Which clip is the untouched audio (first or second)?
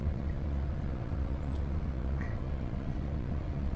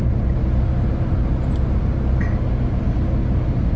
second